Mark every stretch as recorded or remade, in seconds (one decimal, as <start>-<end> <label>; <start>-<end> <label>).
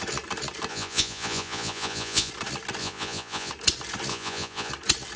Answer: 0.0-0.7 recorded; 0.7-2.3 remade; 2.3-2.8 recorded; 2.8-3.5 remade; 3.5-4.1 recorded; 4.1-4.7 remade; 4.7-5.2 recorded